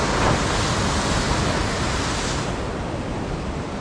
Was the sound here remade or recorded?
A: recorded